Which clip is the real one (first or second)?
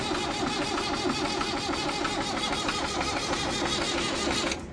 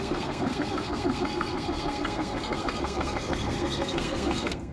first